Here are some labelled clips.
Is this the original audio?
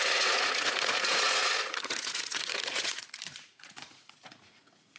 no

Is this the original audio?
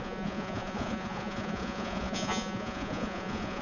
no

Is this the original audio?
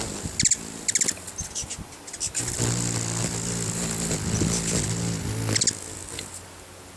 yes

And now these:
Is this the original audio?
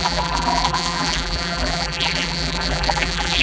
no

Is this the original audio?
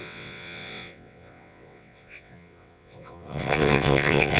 no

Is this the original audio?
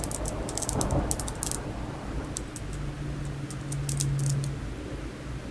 yes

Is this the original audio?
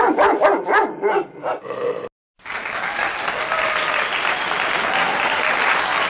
yes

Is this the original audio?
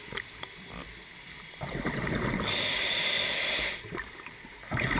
no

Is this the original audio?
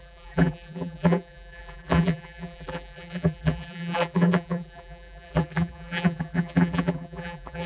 no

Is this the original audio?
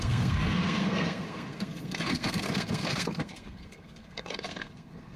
no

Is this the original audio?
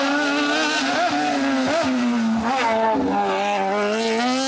yes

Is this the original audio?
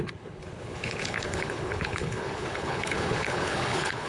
no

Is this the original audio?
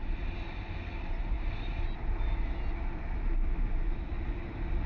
yes